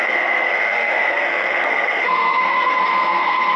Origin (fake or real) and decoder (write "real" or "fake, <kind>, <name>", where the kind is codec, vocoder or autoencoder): fake, codec, SNAC